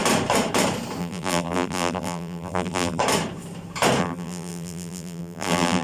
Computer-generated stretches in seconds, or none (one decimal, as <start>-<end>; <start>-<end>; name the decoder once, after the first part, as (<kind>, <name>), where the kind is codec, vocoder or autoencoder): 1.0-3.0 (vocoder, BigVGAN v2); 4.0-5.8